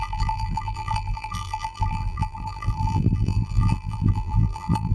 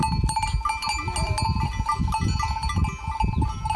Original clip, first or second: second